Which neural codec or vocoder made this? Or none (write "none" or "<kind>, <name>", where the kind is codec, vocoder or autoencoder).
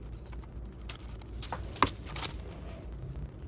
none